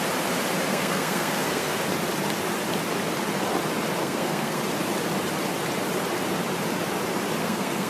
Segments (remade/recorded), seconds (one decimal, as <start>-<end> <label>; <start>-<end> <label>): 0.0-0.7 recorded; 0.7-1.8 remade; 1.8-4.0 recorded; 4.0-4.6 remade; 4.6-7.4 recorded; 7.4-7.9 remade